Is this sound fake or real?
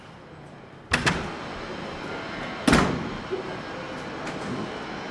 real